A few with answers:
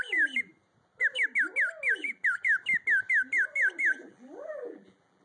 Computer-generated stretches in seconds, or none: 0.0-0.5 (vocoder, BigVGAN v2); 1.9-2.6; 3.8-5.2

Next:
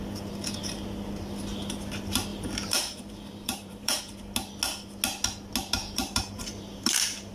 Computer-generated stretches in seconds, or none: 2.3-4.0 (vocoder, BigVGAN v2); 5.8-7.3